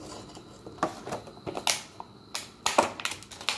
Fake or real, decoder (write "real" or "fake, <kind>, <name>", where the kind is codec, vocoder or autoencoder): real